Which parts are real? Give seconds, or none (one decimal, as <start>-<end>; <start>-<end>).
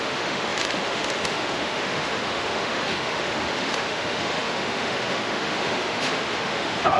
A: none